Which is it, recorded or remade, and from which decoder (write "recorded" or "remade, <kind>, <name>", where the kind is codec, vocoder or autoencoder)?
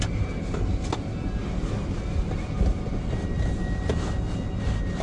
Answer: recorded